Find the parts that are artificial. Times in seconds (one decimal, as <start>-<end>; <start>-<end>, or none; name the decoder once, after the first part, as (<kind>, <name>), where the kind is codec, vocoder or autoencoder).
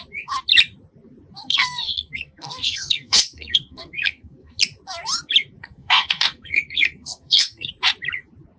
1.4-4.6 (codec, SNAC); 5.6-7.7